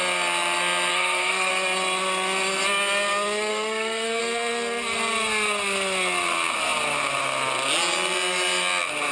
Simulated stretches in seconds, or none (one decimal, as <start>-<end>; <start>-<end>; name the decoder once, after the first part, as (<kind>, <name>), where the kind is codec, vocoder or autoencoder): 0.9-1.5 (codec, SNAC); 3.5-4.2